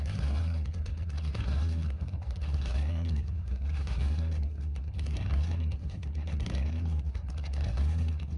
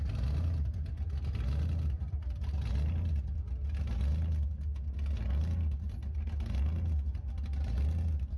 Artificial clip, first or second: first